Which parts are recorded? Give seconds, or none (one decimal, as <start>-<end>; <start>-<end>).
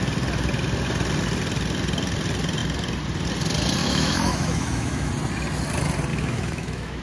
0.0-3.8; 5.1-6.1